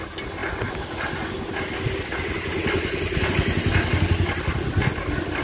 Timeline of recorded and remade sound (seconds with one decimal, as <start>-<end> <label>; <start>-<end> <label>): 0.0-5.4 recorded